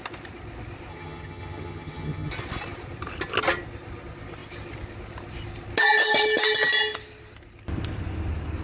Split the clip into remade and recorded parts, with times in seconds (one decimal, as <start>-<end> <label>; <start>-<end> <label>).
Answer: 0.0-0.9 recorded; 0.9-2.3 remade; 2.3-8.6 recorded